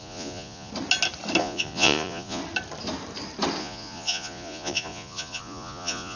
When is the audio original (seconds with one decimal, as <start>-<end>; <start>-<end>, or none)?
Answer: 0.7-1.4; 2.4-3.6